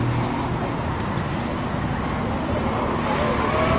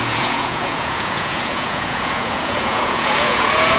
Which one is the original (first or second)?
first